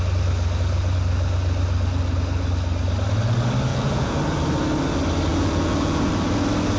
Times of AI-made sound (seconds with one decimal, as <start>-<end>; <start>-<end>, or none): 3.7-4.2; 5.3-6.1